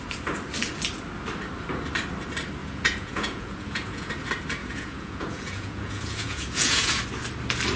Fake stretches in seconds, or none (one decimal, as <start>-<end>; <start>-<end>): 2.6-4.1; 4.6-7.0